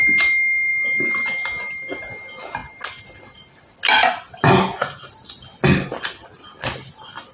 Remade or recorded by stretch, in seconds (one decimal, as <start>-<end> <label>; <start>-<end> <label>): 0.0-7.3 recorded